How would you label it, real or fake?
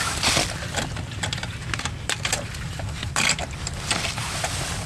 fake